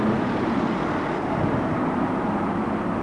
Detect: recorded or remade recorded